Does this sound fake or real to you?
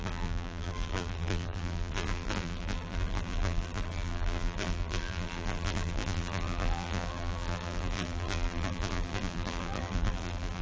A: fake